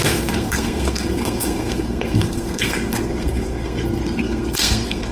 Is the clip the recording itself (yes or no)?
no